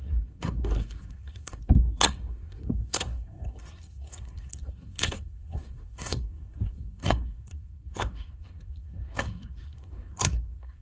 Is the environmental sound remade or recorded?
remade